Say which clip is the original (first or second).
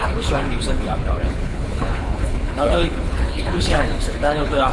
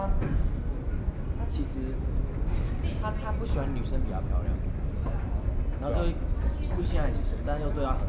second